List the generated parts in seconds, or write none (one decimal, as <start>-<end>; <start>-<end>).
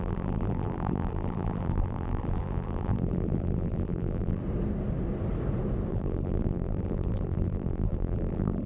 0.0-4.4; 5.9-8.7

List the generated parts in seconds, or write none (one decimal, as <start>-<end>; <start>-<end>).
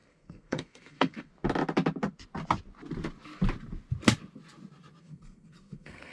0.0-1.3; 5.0-6.1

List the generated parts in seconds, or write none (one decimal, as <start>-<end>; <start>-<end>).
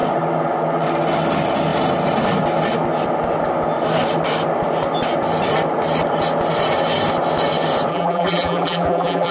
7.9-9.3